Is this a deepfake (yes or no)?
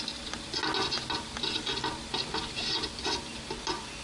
no